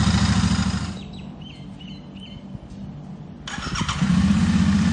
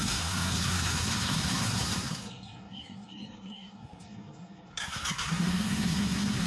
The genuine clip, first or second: first